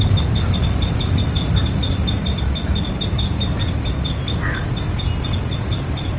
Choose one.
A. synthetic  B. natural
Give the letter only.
B